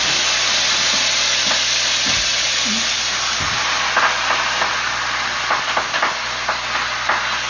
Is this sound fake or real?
real